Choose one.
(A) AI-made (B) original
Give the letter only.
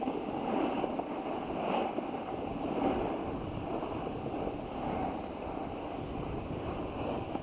B